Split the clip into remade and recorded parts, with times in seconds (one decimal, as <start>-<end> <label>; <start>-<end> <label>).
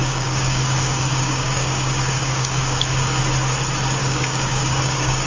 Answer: 0.0-3.2 remade; 3.2-4.0 recorded; 4.0-5.3 remade